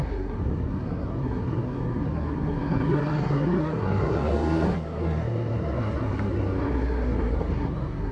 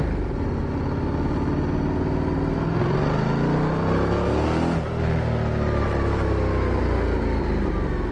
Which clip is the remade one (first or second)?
first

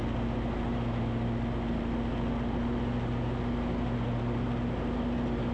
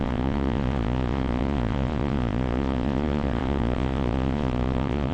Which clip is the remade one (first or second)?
second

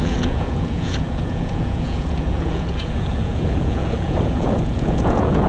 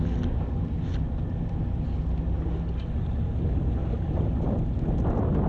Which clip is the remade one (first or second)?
first